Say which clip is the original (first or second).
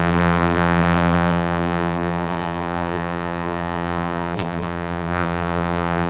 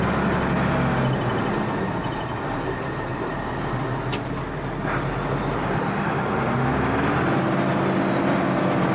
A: second